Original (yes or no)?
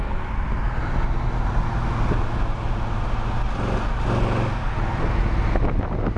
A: yes